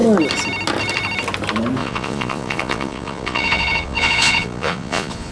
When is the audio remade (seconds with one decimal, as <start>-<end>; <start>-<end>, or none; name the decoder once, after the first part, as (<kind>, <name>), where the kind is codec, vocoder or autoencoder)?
1.8-5.3 (vocoder, Vocos)